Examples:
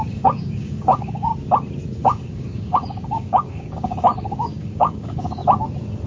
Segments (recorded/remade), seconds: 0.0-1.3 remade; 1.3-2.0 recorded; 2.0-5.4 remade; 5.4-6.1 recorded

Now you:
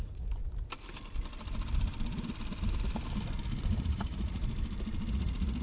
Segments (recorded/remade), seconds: 0.0-0.4 remade; 0.4-3.8 recorded; 3.8-4.4 remade; 4.4-5.1 recorded; 5.1-5.6 remade

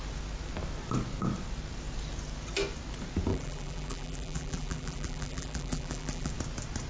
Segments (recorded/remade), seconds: 0.0-3.3 recorded; 3.3-6.3 remade; 6.3-6.9 recorded

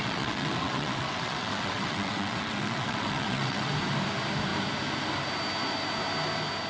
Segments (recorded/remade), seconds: 0.0-3.7 remade; 3.7-6.7 recorded

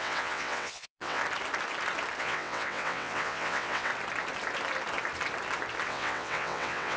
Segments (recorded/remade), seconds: 0.0-1.2 remade; 1.2-2.2 recorded; 2.2-3.9 remade; 3.9-5.9 recorded; 5.9-7.0 remade

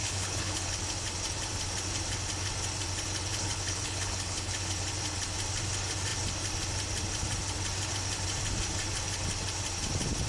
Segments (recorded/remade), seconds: 0.0-0.8 remade; 0.8-3.3 recorded; 3.3-4.7 remade; 4.7-10.3 recorded

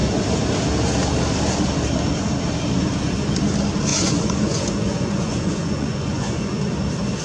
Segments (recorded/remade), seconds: 0.0-3.9 recorded; 3.9-6.6 remade; 6.6-7.2 recorded